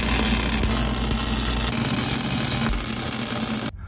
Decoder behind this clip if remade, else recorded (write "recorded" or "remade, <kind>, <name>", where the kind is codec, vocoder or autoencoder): recorded